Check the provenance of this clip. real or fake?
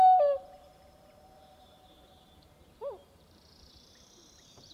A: fake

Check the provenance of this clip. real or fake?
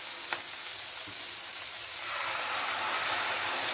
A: real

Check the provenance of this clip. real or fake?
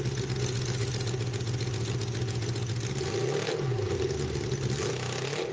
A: real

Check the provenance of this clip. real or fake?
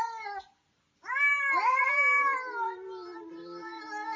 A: real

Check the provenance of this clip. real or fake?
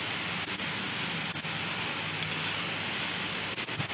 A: real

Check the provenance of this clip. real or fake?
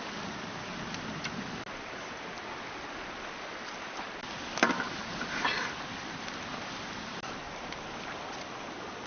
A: real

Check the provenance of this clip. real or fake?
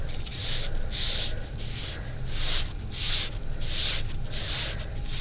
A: real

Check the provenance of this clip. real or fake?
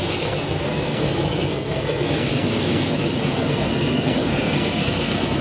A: fake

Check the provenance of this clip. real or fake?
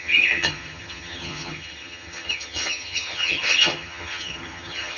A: fake